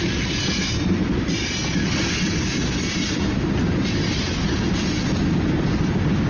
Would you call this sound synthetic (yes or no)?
no